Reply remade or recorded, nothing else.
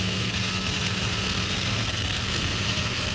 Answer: remade